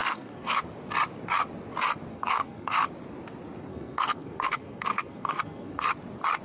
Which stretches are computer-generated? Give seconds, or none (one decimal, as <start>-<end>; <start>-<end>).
0.0-0.6; 2.1-2.9; 3.7-5.9